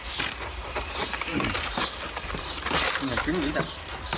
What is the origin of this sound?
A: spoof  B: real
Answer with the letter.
A